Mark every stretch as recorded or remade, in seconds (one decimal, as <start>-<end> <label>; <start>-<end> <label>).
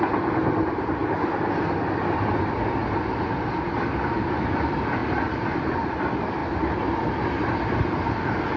0.0-5.0 recorded; 5.0-5.9 remade; 5.9-6.4 recorded; 6.4-7.7 remade; 7.7-8.6 recorded